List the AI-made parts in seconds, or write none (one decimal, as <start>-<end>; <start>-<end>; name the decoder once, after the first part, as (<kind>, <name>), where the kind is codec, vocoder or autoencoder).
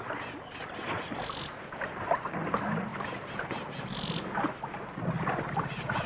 none